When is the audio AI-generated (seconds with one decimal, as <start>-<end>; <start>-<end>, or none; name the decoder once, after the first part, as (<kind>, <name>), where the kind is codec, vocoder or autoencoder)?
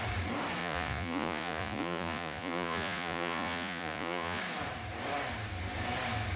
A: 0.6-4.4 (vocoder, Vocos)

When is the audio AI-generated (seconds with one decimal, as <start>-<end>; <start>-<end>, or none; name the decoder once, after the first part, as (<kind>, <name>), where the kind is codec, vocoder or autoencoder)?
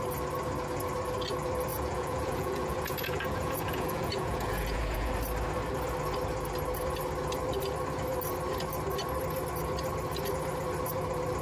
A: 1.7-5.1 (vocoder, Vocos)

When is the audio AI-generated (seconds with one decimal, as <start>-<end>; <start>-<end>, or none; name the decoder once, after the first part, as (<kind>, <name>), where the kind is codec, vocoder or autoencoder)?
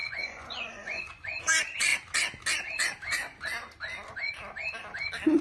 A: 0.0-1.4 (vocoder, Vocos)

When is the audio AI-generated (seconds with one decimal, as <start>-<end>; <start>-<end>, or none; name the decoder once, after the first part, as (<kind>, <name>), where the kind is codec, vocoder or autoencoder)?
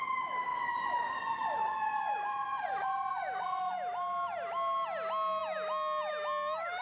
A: 0.5-3.7 (vocoder, Vocos)